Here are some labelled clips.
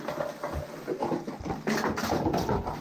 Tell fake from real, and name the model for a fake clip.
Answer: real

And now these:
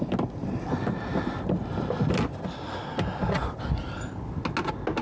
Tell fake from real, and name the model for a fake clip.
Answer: real